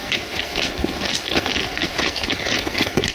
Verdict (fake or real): fake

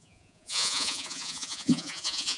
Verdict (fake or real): fake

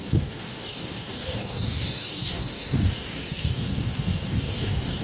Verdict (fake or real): fake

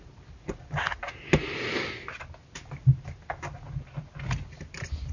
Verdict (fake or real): real